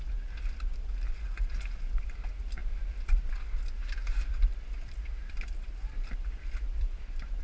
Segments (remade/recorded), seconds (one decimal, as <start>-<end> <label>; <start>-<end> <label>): 0.0-7.4 recorded